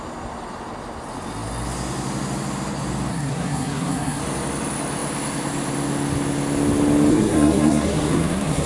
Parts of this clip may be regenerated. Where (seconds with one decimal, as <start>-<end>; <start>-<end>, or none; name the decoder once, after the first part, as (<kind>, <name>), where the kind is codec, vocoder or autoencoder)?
3.1-4.2 (codec, SNAC); 7.1-8.7